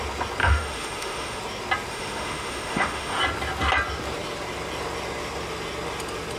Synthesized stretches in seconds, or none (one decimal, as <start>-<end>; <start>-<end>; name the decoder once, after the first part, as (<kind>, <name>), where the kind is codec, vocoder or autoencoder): 0.4-1.4 (autoencoder, DAC-VAE); 1.9-3.2